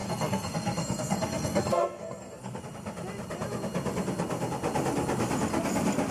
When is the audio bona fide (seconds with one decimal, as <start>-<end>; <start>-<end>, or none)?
2.6-6.1